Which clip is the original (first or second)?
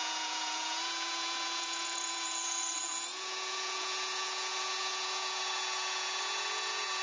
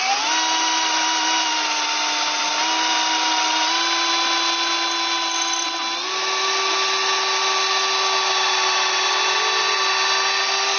second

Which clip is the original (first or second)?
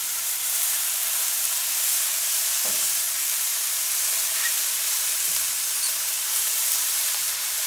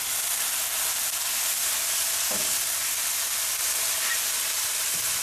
second